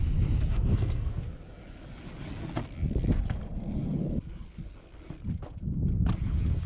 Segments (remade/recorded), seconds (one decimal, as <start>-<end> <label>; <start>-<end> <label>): 0.0-0.5 recorded; 0.5-1.2 remade; 1.2-6.7 recorded